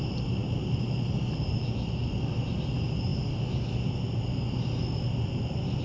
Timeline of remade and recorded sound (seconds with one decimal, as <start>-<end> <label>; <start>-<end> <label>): 0.0-0.4 remade; 0.4-1.3 recorded; 1.3-5.8 remade